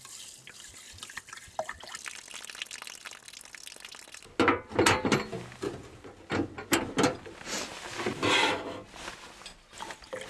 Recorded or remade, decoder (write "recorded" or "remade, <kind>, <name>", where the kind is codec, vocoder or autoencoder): recorded